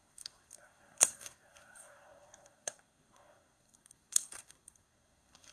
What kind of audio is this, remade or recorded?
remade